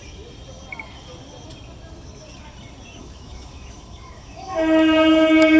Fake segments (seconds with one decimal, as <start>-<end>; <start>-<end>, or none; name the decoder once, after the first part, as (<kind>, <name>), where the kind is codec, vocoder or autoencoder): 3.0-5.6 (autoencoder, DAC-VAE)